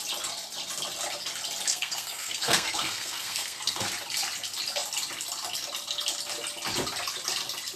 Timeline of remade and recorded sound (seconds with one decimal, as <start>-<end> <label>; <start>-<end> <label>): 0.0-1.7 recorded; 1.7-3.9 remade; 3.9-7.8 recorded